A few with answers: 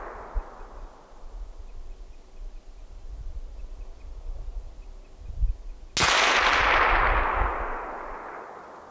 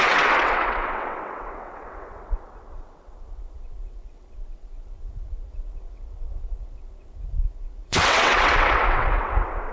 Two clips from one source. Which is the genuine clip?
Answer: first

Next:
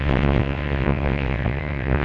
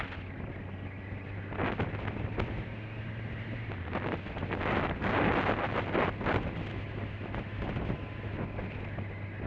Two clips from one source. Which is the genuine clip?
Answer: second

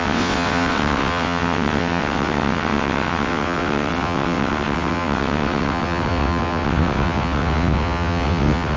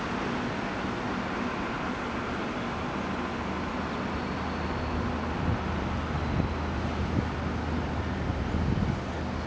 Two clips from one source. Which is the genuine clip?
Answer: second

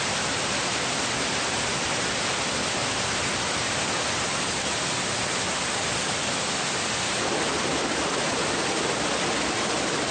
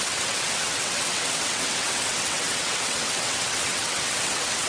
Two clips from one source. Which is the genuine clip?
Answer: first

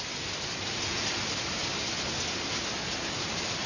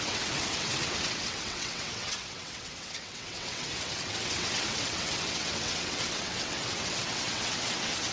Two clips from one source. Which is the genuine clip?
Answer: first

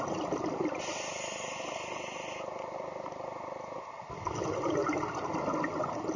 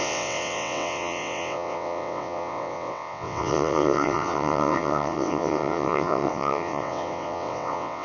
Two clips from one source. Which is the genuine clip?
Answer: first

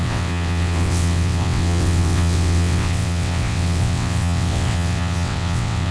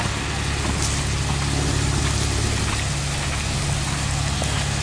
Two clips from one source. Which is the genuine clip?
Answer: second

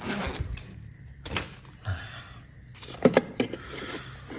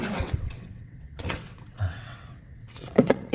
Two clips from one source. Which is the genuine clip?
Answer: first